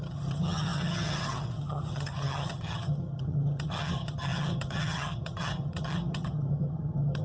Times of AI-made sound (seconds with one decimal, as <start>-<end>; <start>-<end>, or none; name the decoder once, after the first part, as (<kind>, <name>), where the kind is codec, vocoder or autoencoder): 0.0-7.2 (vocoder, HiFi-GAN)